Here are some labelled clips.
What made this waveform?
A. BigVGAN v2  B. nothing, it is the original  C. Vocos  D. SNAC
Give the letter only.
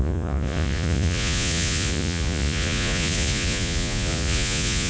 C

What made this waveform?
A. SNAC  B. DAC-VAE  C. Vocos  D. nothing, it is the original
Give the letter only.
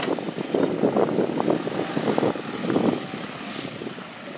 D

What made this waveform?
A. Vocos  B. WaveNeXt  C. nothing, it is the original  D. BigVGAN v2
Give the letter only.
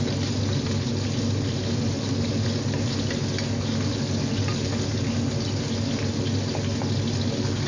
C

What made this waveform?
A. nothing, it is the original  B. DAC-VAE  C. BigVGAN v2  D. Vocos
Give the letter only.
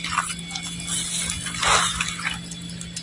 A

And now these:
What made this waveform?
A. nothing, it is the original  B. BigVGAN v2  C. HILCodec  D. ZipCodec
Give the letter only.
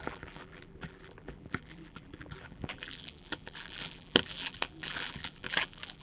B